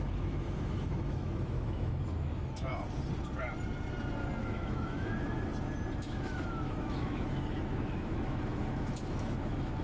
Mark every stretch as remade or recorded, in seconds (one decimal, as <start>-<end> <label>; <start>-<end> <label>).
0.0-2.7 remade; 2.7-4.4 recorded; 4.4-5.5 remade; 5.5-6.0 recorded; 6.0-9.8 remade